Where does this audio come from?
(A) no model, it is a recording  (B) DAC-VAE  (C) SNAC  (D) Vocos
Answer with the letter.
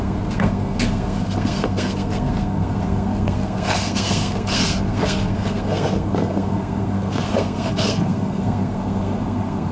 C